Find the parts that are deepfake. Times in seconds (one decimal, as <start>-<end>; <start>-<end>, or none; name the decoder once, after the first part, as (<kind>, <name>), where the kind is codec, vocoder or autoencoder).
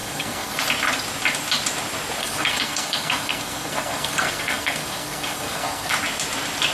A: 0.0-0.6 (codec, SNAC); 2.2-5.9